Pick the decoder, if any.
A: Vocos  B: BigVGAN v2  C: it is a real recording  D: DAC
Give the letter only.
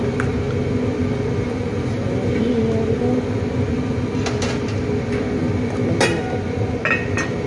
C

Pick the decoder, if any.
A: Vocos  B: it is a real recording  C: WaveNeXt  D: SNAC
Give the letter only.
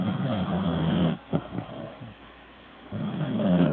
D